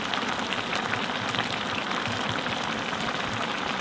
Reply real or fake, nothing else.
real